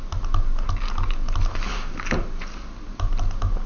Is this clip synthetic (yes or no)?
no